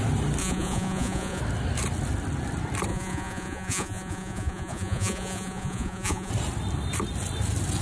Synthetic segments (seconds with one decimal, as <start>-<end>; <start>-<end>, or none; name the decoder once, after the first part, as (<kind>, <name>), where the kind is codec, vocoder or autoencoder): 0.4-1.4 (vocoder, Vocos); 2.9-6.3